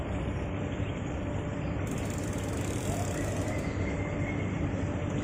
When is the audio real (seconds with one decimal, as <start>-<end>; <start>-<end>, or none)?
0.0-5.2